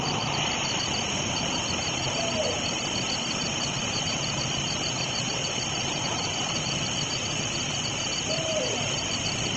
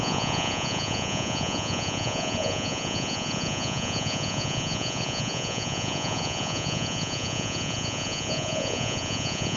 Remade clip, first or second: second